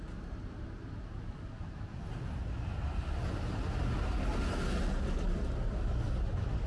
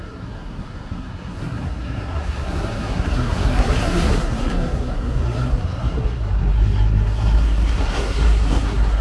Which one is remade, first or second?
second